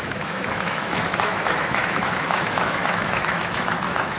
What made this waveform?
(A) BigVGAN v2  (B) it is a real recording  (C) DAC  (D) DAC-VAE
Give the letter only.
D